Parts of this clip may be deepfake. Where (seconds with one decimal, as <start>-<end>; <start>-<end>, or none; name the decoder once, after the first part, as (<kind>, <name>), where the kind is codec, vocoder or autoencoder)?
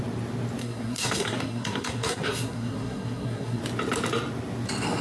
0.6-3.6 (codec, SNAC)